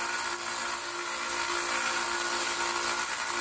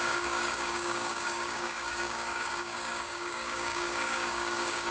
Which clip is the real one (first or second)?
first